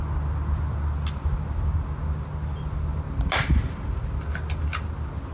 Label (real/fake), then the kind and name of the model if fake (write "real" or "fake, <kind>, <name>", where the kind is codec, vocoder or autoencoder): real